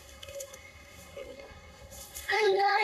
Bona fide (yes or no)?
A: no